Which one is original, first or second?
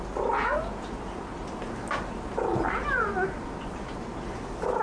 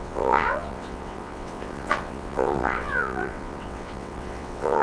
first